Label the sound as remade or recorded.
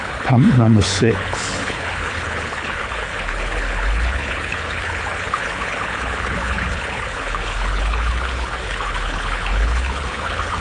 remade